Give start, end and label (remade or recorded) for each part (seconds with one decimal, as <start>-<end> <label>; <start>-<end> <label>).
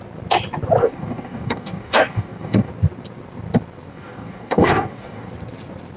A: 0.0-0.8 recorded; 0.8-2.7 remade; 2.7-3.9 recorded; 3.9-5.3 remade; 5.3-6.0 recorded